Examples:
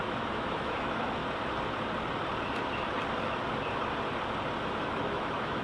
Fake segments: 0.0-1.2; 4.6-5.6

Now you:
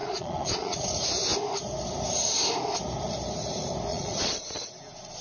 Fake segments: 0.0-0.9; 3.9-4.7